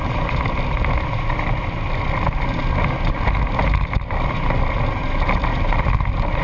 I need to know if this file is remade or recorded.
recorded